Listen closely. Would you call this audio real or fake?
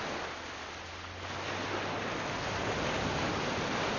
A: real